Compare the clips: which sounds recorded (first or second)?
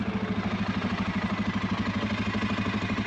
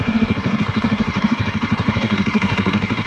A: first